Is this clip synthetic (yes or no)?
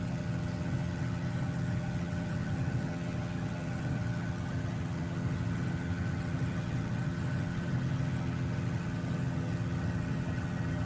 yes